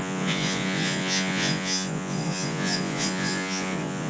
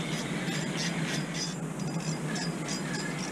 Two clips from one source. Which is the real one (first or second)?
second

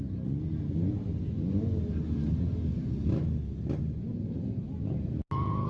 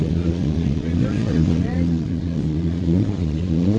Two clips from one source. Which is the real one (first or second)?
first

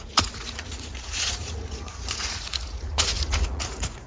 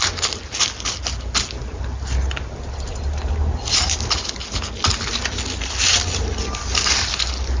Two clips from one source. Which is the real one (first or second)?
second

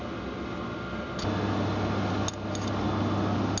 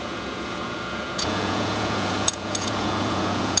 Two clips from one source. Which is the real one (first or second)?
first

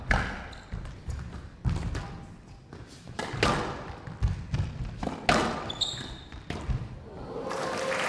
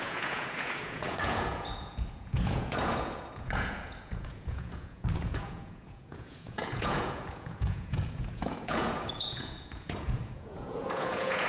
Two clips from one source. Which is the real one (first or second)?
first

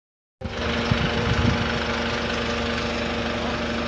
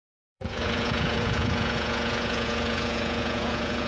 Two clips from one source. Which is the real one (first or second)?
first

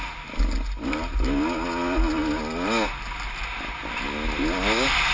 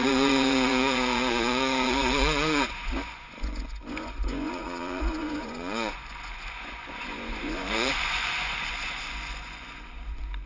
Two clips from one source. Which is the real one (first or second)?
first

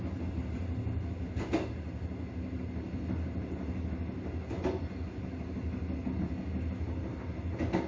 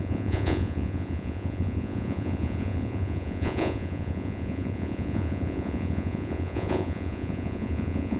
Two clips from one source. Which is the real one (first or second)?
first